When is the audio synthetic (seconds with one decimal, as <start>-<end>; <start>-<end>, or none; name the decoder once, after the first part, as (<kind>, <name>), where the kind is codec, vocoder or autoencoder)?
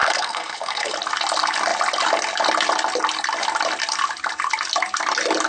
0.0-0.9 (codec, SNAC)